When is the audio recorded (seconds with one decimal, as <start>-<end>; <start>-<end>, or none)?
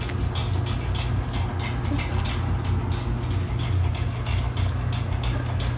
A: 0.0-5.8